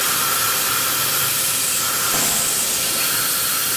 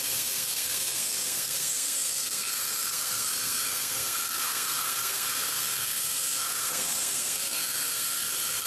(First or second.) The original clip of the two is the first